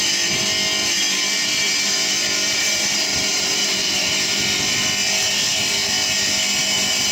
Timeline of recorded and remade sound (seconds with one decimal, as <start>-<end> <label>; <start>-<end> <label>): 0.0-0.8 recorded; 0.8-4.4 remade; 4.4-7.1 recorded